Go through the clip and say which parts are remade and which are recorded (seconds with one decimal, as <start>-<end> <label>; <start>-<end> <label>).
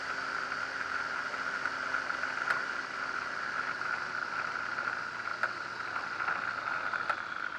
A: 0.0-7.6 recorded